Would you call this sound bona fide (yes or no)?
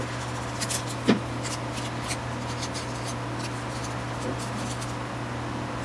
yes